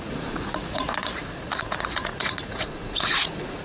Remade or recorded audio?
remade